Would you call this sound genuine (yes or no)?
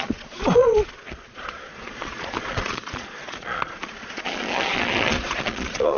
no